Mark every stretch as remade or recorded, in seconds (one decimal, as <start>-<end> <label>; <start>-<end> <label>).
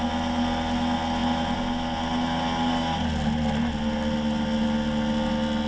0.0-5.7 recorded